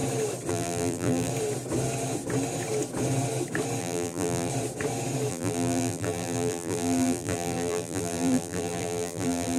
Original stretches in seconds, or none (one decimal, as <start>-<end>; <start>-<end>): 0.0-0.5; 1.3-3.8; 4.5-5.3